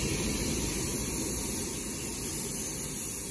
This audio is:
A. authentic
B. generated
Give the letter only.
A